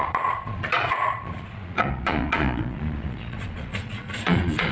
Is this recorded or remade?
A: remade